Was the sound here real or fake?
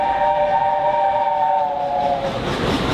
real